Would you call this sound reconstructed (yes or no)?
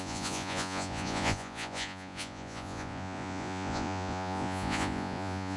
yes